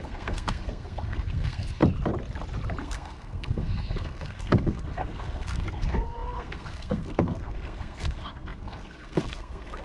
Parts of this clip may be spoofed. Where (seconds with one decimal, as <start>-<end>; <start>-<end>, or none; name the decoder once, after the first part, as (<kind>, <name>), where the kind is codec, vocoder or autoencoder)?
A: 0.0-1.8 (codec, SNAC); 2.8-9.8